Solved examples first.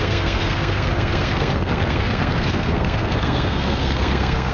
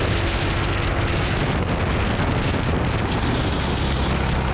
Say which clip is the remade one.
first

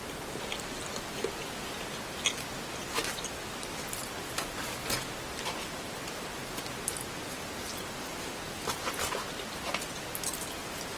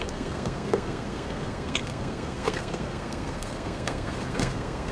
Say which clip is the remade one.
second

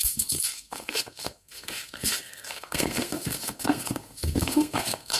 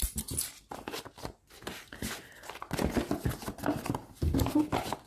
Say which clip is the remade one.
first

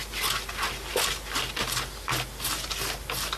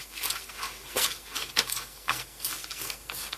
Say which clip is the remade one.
second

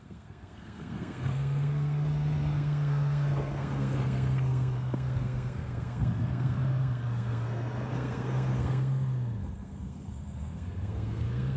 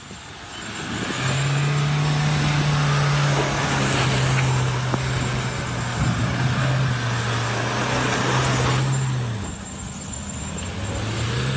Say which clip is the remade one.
first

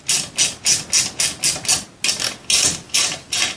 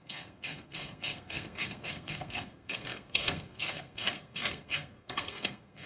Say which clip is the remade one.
second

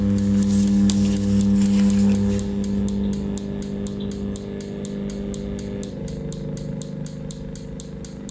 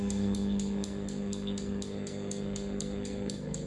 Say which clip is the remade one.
second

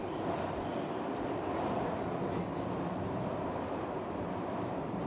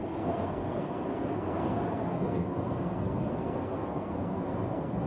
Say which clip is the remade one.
second